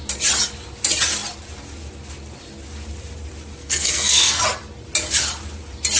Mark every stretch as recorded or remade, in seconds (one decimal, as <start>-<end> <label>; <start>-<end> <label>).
0.0-3.6 recorded; 3.6-4.4 remade; 4.4-6.0 recorded